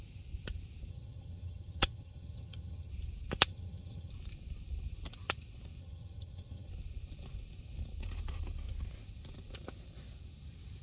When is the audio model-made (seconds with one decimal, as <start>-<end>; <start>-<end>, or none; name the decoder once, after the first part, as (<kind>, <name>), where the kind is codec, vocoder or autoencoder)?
0.9-2.9 (vocoder, HiFi-GAN); 3.5-4.1; 5.8-6.7